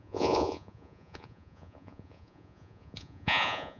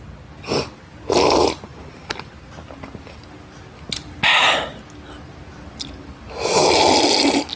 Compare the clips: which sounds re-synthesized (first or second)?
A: first